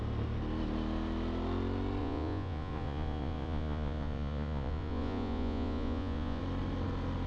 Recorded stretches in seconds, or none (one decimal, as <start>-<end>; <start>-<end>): 0.0-2.0; 6.4-7.3